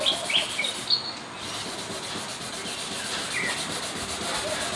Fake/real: real